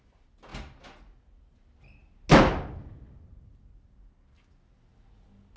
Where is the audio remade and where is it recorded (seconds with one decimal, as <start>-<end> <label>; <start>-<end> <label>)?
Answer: 0.0-5.6 recorded